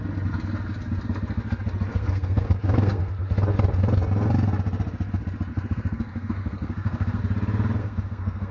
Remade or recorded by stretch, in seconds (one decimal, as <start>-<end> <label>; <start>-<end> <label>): 0.0-1.9 recorded; 1.9-3.1 remade; 3.1-5.5 recorded; 5.5-7.2 remade; 7.2-7.8 recorded; 7.8-8.5 remade